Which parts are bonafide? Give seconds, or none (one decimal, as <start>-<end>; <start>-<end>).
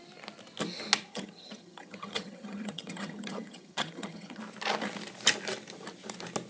0.0-1.1; 4.4-6.5